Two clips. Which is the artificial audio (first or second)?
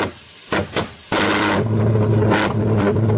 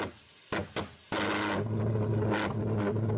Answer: first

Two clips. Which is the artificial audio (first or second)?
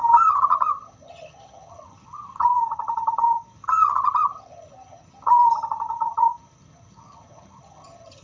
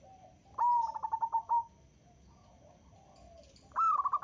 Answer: first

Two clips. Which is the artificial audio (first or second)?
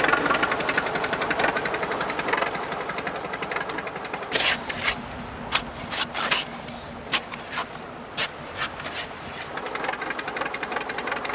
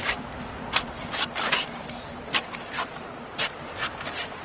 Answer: second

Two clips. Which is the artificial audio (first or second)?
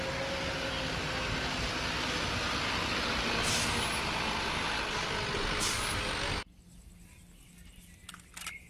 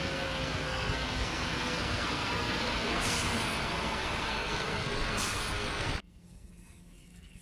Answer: second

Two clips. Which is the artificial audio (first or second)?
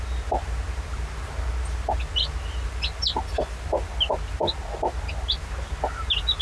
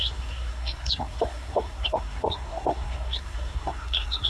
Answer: second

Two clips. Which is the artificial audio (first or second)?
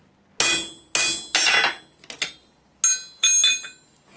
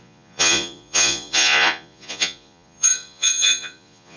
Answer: second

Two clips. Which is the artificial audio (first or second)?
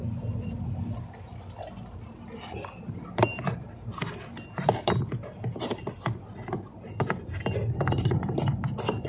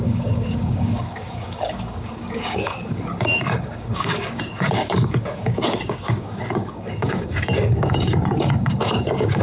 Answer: second